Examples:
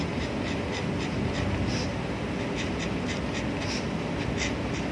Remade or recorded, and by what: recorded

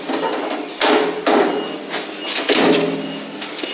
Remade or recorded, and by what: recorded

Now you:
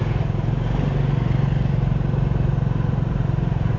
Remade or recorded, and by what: recorded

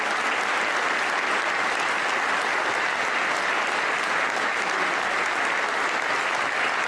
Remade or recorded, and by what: recorded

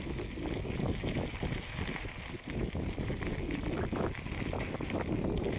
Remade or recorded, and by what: recorded